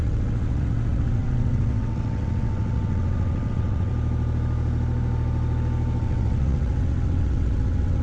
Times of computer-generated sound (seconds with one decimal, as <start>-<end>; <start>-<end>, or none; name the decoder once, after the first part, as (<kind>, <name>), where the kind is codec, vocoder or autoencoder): 0.0-3.9 (vocoder, WaveNeXt); 6.0-8.0